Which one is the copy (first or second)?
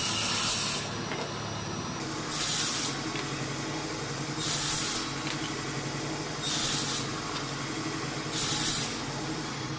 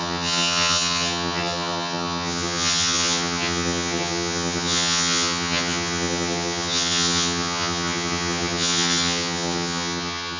second